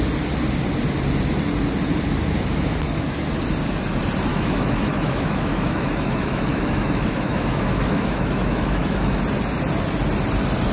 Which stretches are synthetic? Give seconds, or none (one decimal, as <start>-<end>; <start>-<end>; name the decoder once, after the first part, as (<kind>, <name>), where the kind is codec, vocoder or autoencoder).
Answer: 4.3-9.2 (autoencoder, DAC-VAE)